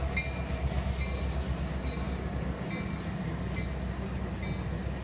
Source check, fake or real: real